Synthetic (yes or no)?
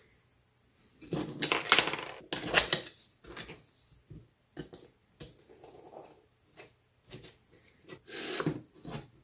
no